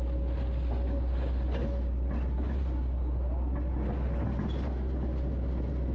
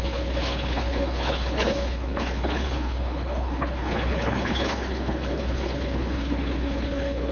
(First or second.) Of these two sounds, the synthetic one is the second